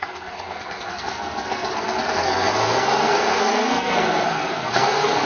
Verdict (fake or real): fake